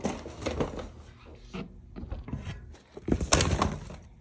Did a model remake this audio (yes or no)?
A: no